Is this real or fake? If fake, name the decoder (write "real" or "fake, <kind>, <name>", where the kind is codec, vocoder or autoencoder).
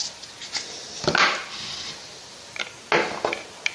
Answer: real